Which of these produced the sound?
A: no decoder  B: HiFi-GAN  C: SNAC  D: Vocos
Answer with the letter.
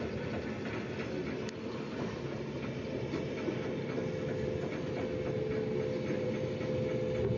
A